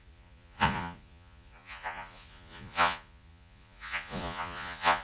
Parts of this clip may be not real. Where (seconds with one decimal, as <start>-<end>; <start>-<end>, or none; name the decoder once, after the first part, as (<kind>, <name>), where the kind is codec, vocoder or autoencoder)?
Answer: 0.0-5.0 (vocoder, Vocos)